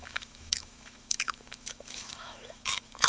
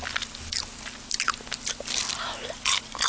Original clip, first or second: second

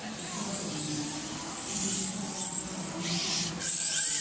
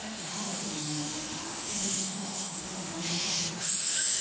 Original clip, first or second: first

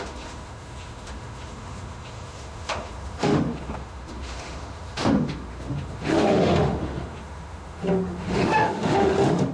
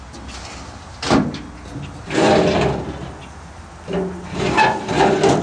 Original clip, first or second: second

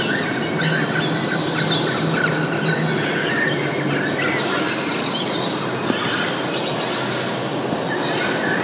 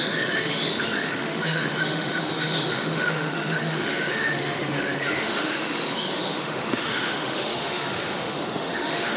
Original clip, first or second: first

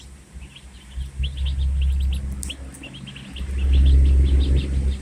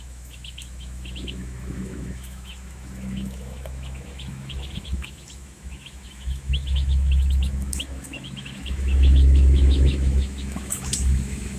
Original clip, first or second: first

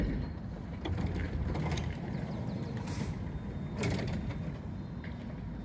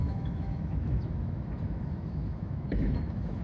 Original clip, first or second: first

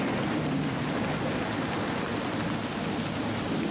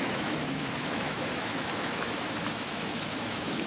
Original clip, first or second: first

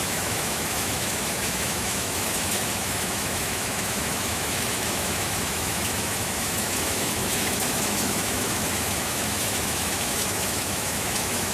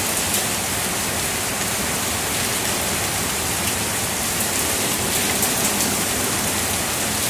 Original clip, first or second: second